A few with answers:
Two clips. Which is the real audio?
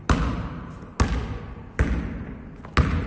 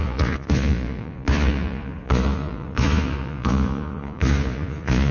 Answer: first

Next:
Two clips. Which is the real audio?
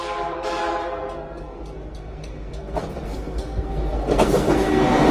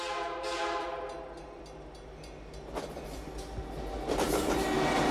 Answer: second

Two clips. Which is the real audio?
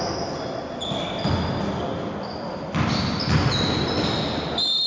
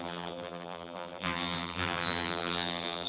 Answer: first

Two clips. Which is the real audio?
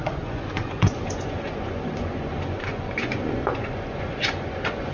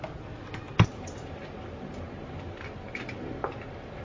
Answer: second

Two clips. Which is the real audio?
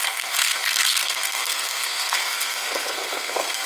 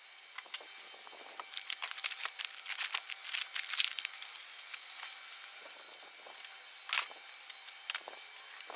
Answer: second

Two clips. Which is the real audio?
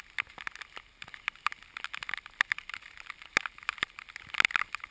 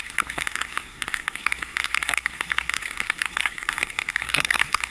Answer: first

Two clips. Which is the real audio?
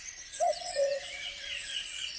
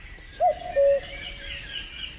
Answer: second